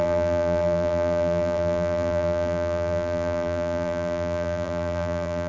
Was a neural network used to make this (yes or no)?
yes